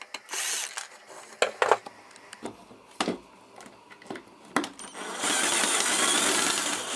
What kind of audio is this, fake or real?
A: real